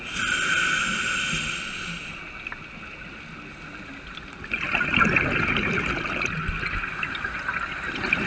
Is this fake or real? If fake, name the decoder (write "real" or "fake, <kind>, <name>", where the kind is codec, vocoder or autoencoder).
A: real